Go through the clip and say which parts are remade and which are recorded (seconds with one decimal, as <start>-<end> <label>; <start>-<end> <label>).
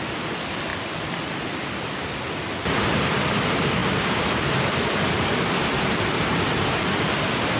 0.0-7.6 recorded